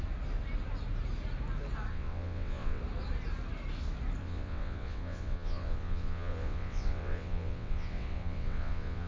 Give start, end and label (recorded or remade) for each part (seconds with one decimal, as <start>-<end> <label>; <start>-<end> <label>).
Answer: 0.0-1.9 recorded; 1.9-2.8 remade; 2.8-4.2 recorded; 4.2-9.1 remade